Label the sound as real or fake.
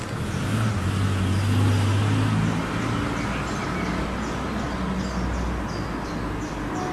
real